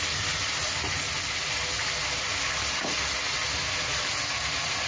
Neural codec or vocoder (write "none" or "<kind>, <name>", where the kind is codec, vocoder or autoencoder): none